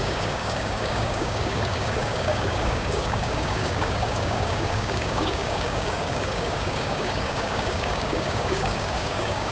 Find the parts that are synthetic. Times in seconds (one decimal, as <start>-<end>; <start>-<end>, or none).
0.0-9.5